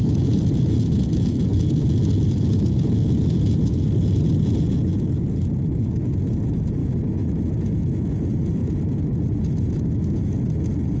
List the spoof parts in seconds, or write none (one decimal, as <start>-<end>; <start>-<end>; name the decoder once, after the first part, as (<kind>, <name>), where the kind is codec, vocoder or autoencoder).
none